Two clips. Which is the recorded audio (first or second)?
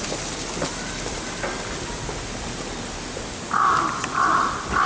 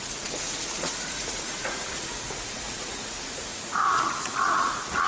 first